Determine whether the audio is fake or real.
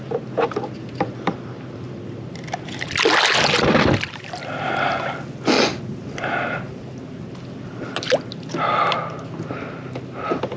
real